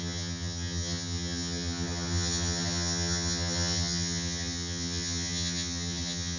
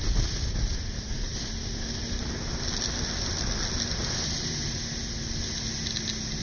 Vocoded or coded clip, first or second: first